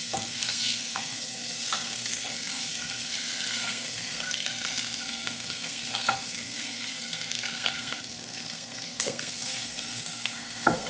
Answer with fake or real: fake